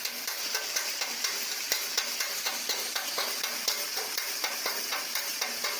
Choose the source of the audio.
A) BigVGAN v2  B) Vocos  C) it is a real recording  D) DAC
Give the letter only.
A